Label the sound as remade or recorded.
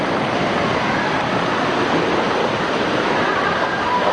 recorded